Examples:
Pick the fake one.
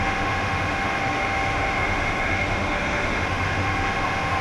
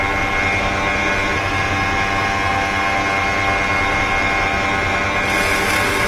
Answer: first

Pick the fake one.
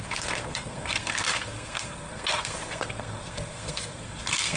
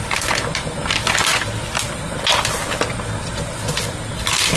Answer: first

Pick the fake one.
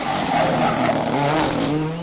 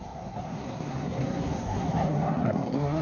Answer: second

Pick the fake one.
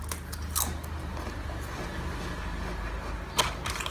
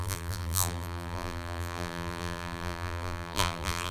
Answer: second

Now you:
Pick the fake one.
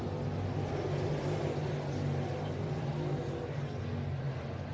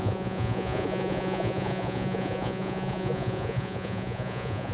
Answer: second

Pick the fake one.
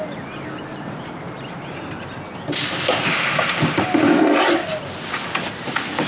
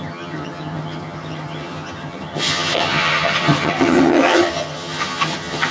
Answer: second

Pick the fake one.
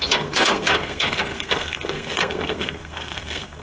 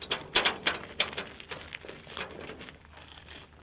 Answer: first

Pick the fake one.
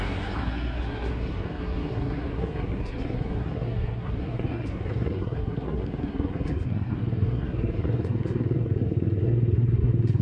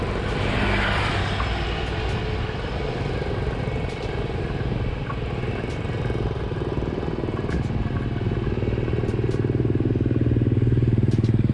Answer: first